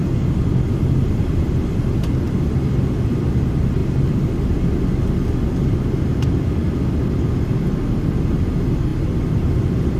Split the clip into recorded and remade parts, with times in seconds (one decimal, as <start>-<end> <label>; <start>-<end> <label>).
0.0-1.5 remade; 1.5-8.9 recorded; 8.9-10.0 remade